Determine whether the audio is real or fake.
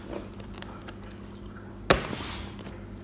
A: real